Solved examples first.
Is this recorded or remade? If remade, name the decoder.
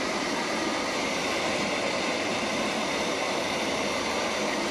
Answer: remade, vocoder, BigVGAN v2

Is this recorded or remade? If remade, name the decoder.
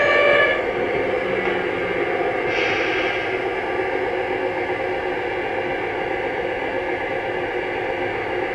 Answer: recorded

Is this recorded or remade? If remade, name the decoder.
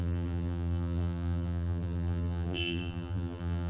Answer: remade, vocoder, BigVGAN v2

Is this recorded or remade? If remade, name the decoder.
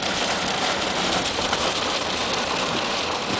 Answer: remade, vocoder, BigVGAN v2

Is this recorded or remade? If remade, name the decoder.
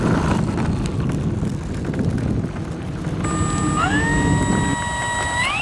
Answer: recorded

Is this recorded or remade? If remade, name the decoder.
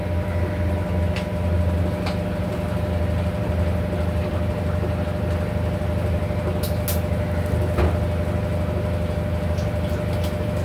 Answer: recorded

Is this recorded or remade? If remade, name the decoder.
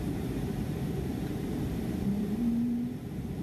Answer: remade, vocoder, BigVGAN v2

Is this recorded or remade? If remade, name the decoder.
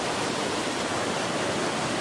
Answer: recorded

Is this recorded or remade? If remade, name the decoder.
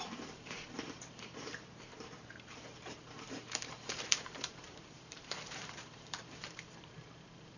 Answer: remade, vocoder, BigVGAN v2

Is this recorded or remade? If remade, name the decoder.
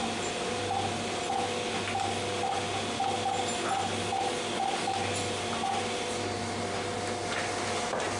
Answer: recorded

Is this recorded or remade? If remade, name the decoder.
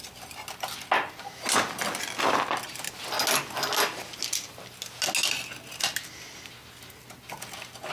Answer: recorded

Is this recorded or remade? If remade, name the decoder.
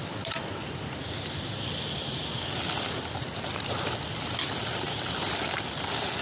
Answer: remade, vocoder, BigVGAN v2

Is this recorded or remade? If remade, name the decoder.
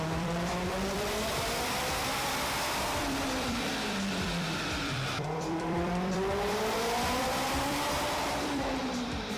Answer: remade, vocoder, BigVGAN v2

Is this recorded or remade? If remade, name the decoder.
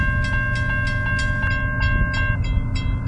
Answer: recorded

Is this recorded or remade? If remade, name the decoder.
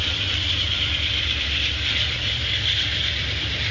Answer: remade, vocoder, BigVGAN v2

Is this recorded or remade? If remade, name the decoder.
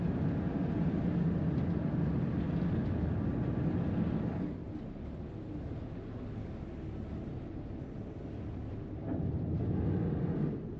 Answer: recorded